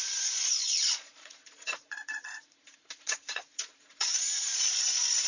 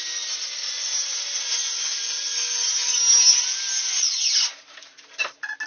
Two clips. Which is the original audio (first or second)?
second